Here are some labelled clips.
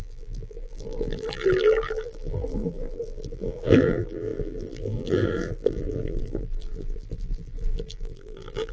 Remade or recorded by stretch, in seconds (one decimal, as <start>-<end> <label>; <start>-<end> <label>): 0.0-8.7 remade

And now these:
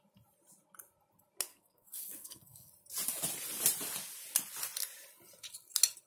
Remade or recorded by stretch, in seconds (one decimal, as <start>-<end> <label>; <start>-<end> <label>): 0.0-1.5 recorded; 1.5-2.7 remade; 2.7-6.1 recorded

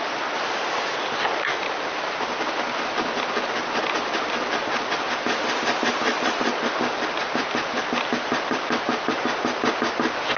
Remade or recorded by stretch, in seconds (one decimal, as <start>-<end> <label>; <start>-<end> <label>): 0.0-10.4 recorded